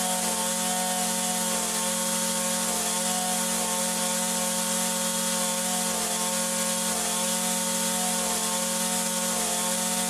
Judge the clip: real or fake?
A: real